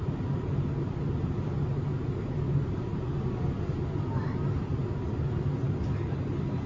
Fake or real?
real